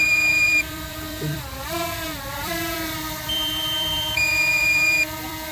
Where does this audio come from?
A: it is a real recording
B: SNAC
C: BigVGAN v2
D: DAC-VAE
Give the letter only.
C